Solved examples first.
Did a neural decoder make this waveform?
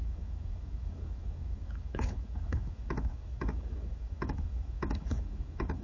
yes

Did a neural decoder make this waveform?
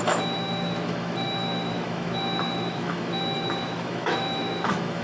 yes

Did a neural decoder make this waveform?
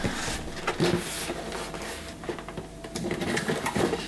no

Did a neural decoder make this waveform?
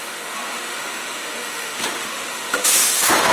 yes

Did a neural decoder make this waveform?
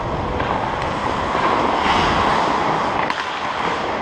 no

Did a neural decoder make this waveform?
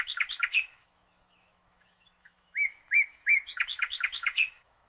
yes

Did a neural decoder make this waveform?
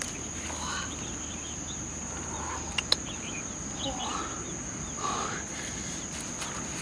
no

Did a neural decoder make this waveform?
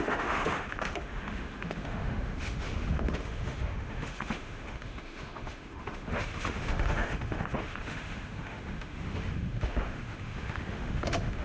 yes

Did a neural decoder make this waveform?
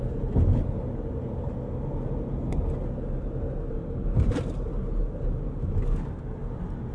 no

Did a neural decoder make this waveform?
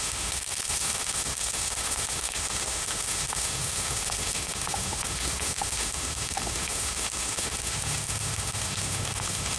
yes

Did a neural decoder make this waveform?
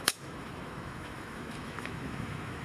yes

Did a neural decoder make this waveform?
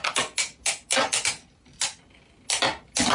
no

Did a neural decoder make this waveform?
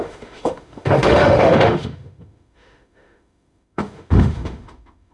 yes